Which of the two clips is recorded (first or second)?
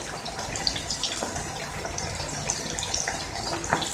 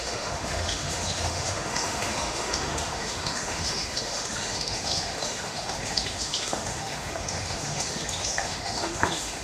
first